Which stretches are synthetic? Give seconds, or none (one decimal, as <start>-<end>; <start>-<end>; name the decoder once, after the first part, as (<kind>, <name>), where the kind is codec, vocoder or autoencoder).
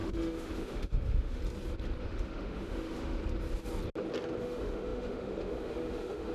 0.0-1.4 (autoencoder, DAC-VAE); 2.0-3.2; 4.4-6.3